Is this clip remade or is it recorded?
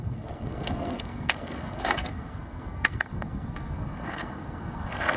remade